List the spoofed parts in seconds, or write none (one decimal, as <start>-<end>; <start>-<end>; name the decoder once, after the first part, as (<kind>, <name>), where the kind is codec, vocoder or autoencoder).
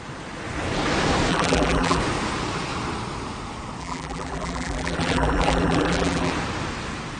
1.3-2.0 (vocoder, BigVGAN v2); 3.8-6.3